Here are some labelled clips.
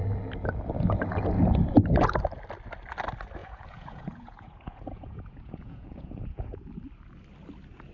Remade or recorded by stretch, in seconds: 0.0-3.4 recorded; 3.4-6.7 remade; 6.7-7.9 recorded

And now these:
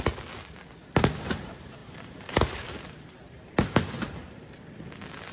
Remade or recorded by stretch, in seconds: 0.0-1.8 recorded; 1.8-4.6 remade; 4.6-5.3 recorded

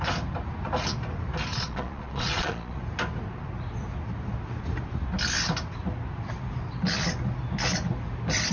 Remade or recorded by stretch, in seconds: 0.0-1.5 recorded; 1.5-2.8 remade; 2.8-8.5 recorded

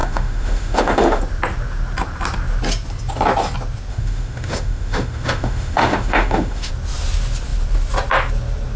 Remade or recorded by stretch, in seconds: 0.0-1.2 remade; 1.2-3.9 recorded; 3.9-6.7 remade; 6.7-8.8 recorded

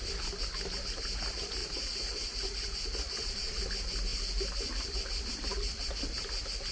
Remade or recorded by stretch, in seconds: 0.0-1.6 recorded; 1.6-3.6 remade; 3.6-6.7 recorded

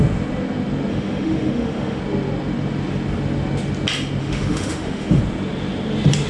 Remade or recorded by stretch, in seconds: 0.0-0.9 recorded; 0.9-2.0 remade; 2.0-4.2 recorded; 4.2-5.2 remade; 5.2-6.3 recorded

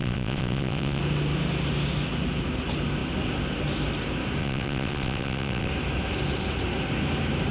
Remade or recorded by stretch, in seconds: 0.0-1.0 remade; 1.0-4.4 recorded; 4.4-5.7 remade; 5.7-7.5 recorded